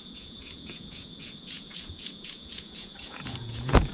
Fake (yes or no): yes